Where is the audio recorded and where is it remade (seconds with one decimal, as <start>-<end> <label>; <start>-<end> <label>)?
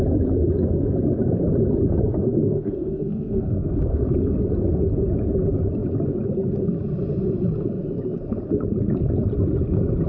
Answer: 0.0-2.4 recorded; 2.4-4.0 remade; 4.0-10.1 recorded